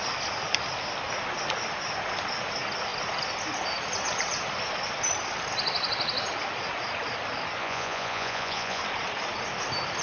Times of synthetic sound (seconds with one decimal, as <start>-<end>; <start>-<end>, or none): 7.6-8.8